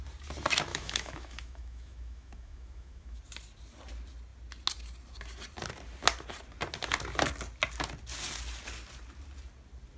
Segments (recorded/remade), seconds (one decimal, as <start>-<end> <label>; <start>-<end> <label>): 0.0-0.7 recorded; 0.7-3.2 remade; 3.2-10.0 recorded